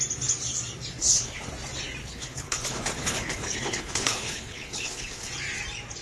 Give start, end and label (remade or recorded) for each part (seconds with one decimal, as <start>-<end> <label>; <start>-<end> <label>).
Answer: 0.0-1.0 recorded; 1.0-1.5 remade; 1.5-2.0 recorded; 2.0-5.3 remade; 5.3-6.0 recorded